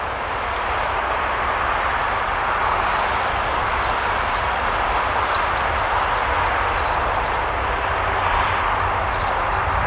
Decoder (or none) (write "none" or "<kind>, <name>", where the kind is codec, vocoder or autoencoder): none